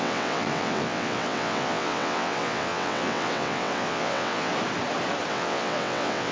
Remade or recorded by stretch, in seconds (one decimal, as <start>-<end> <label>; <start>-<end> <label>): 0.0-4.5 remade; 4.5-5.3 recorded; 5.3-6.3 remade